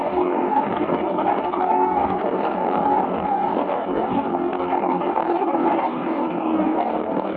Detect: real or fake fake